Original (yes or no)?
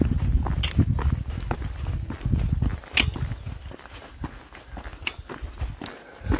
yes